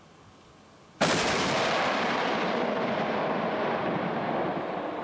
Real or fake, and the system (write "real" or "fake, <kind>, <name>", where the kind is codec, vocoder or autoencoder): real